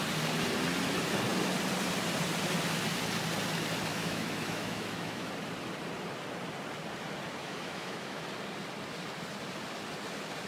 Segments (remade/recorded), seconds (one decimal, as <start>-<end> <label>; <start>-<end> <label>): 0.0-3.9 recorded; 3.9-5.3 remade; 5.3-7.4 recorded; 7.4-8.2 remade; 8.2-10.5 recorded